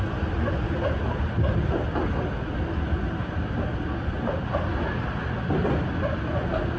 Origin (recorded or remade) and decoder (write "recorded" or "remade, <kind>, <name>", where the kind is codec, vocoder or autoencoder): recorded